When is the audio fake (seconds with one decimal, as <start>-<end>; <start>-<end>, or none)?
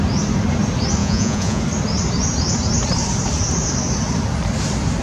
1.0-1.6